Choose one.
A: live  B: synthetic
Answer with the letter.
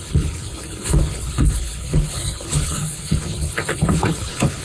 B